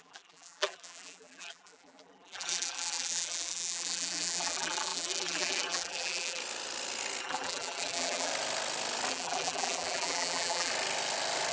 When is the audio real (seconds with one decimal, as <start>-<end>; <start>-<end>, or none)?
6.4-7.2; 8.3-9.1; 10.7-11.5